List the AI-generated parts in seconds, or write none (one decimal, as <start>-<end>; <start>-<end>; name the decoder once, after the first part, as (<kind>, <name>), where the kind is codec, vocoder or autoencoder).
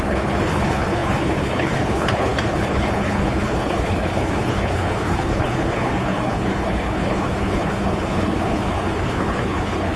0.0-10.0 (codec, HILCodec)